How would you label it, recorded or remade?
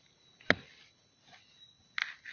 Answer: recorded